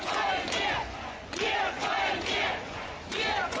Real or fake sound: fake